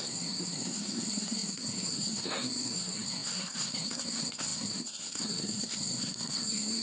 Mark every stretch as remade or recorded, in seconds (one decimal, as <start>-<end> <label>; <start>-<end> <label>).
0.0-6.8 remade